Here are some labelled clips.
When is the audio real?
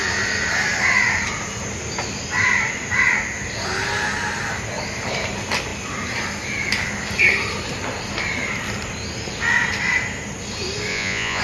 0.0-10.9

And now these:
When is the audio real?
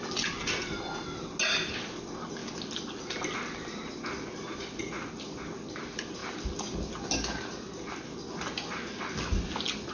0.0-9.9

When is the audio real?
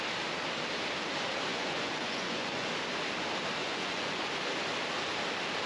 0.0-1.5; 2.7-3.6; 4.3-5.7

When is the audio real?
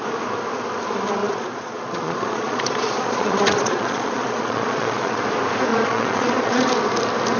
0.0-1.2; 5.2-5.7; 6.7-7.4